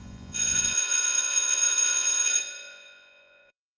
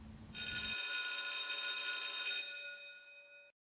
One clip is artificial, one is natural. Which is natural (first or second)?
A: second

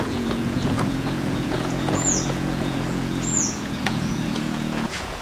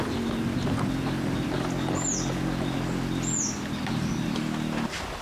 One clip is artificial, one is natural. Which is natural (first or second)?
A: second